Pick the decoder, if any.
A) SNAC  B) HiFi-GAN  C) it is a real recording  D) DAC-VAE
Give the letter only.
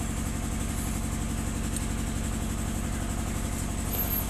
C